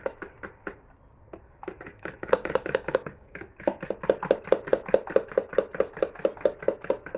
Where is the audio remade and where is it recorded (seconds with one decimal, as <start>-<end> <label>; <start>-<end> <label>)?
0.0-1.9 recorded; 1.9-3.4 remade; 3.4-7.2 recorded

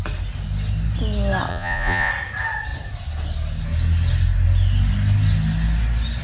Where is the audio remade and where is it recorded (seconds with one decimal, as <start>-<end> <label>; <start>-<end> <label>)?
0.0-1.5 recorded; 1.5-2.1 remade; 2.1-6.2 recorded

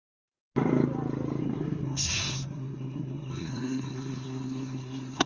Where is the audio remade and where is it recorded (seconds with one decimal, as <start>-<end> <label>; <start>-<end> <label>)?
0.0-0.4 remade; 0.4-1.4 recorded; 1.4-5.3 remade

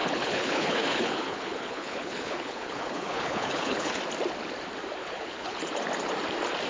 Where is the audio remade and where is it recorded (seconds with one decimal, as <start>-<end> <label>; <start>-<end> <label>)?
0.0-4.0 remade; 4.0-5.0 recorded; 5.0-5.6 remade; 5.6-6.7 recorded

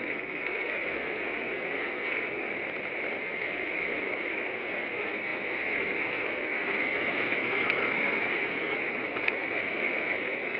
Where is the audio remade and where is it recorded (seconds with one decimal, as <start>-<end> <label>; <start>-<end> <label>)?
0.0-2.5 remade; 2.5-3.2 recorded; 3.2-10.6 remade